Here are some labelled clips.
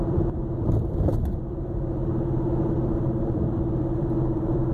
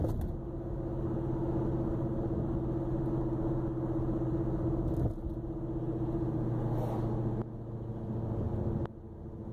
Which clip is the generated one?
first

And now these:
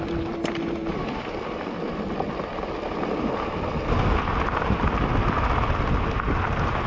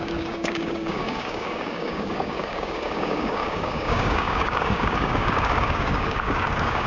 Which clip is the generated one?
second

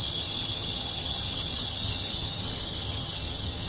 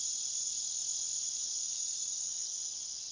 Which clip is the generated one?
first